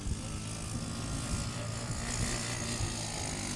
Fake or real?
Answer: real